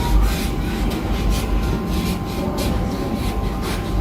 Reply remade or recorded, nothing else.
recorded